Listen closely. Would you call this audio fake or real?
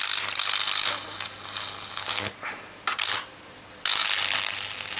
real